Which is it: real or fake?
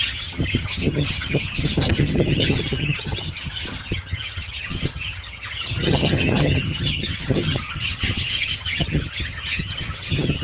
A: fake